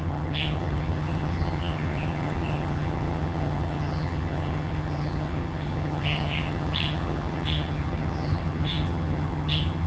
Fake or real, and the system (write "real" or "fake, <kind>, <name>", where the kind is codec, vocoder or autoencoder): fake, vocoder, HiFi-GAN